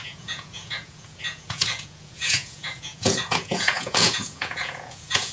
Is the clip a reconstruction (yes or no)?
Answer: yes